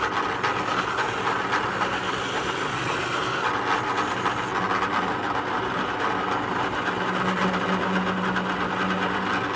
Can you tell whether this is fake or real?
real